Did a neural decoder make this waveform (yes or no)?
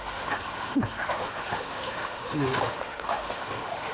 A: yes